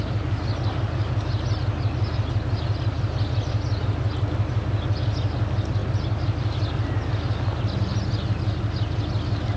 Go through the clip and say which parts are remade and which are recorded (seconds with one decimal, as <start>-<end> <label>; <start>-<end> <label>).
0.0-9.6 recorded

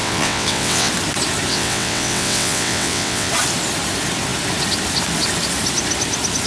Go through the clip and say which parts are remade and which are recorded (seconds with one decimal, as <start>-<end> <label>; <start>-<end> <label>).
0.0-0.9 remade; 0.9-1.5 recorded; 1.5-3.3 remade; 3.3-6.5 recorded

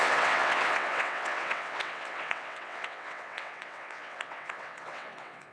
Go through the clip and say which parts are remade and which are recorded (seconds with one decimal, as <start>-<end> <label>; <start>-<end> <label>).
0.0-5.5 remade

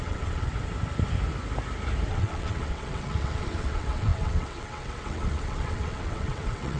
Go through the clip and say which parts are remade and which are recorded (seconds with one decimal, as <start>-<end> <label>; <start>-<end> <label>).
0.0-0.5 remade; 0.5-2.1 recorded; 2.1-6.8 remade